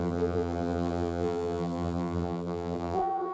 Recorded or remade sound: remade